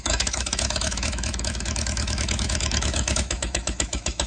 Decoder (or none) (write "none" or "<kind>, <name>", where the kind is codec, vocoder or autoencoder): autoencoder, DAC-VAE